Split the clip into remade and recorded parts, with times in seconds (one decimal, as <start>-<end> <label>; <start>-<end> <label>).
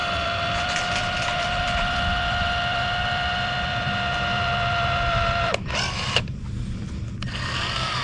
0.0-8.0 remade